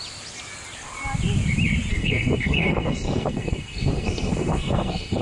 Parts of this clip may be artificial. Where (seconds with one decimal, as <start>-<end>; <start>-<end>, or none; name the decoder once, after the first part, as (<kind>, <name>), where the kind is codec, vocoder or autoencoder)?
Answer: 1.9-5.2 (codec, SNAC)